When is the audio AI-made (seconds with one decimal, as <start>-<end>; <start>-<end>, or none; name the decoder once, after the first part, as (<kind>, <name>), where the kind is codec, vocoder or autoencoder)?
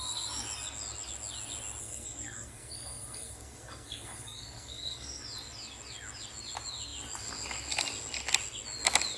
1.8-5.2 (codec, SNAC)